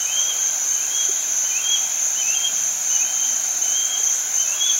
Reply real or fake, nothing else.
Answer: real